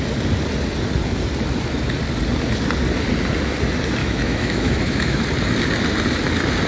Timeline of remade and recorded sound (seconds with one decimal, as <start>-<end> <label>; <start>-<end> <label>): 0.0-4.0 recorded; 4.0-5.2 remade; 5.2-6.7 recorded